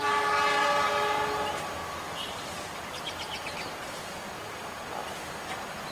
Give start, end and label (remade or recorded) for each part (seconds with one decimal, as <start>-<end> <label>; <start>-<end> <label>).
0.0-1.8 recorded; 1.8-4.6 remade; 4.6-5.9 recorded